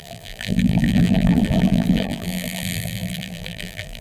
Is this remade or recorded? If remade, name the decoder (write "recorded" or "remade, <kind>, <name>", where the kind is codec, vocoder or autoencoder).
remade, vocoder, BigVGAN v2